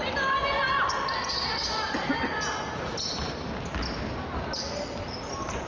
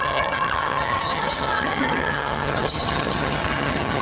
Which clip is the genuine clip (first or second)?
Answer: first